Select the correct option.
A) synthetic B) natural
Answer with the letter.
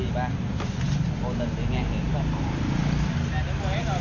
B